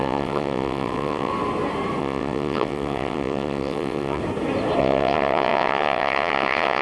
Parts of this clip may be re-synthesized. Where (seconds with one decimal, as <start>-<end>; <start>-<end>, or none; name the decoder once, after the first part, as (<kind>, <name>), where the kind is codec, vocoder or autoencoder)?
0.0-1.3 (vocoder, WaveNeXt); 2.0-4.2; 4.8-6.8